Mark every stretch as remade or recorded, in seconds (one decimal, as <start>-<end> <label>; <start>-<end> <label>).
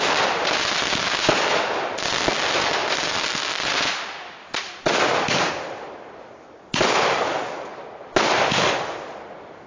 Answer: 0.0-2.8 recorded; 2.8-7.2 remade; 7.2-9.7 recorded